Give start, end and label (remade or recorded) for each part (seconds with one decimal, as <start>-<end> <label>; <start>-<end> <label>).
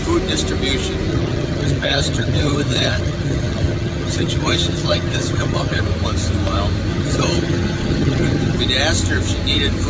0.0-1.1 recorded; 1.1-5.8 remade; 5.8-6.9 recorded; 6.9-8.6 remade; 8.6-9.9 recorded